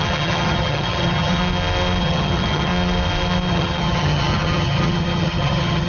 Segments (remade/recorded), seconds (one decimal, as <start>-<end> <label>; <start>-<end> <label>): 0.0-1.4 remade; 1.4-2.0 recorded; 2.0-2.7 remade; 2.7-3.5 recorded; 3.5-5.9 remade